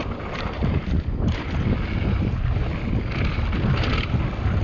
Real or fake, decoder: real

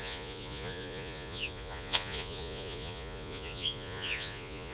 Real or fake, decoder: fake, vocoder, Vocos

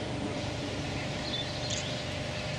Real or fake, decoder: real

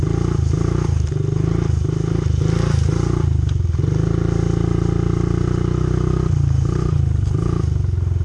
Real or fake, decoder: real